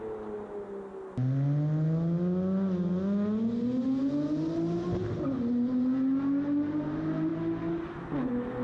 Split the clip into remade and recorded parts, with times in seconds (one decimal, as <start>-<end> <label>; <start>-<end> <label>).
0.0-8.6 recorded